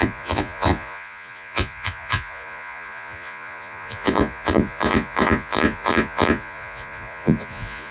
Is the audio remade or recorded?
remade